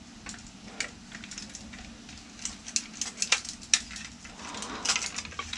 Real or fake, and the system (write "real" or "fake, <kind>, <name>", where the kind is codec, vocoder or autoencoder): real